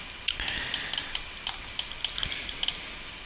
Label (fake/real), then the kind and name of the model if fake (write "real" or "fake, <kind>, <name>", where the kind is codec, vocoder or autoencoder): real